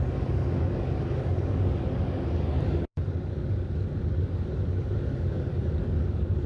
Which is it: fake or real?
fake